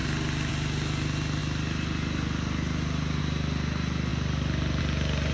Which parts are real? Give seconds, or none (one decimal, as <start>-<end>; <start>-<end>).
0.0-5.3